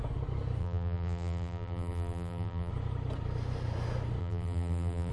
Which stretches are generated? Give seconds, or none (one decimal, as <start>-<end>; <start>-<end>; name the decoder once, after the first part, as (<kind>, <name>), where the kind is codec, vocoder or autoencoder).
0.6-2.7 (vocoder, BigVGAN v2); 4.2-5.1